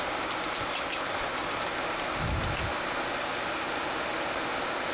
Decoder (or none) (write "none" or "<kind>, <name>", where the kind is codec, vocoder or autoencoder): none